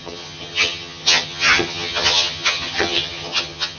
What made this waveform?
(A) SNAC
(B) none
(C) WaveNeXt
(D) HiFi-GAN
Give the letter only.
D